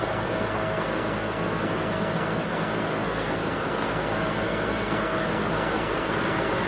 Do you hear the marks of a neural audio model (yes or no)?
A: yes